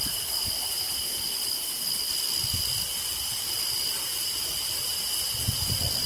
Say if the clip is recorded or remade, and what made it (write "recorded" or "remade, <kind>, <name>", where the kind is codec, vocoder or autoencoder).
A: recorded